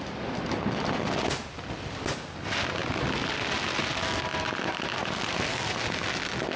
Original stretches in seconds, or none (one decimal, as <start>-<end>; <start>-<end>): 0.0-6.6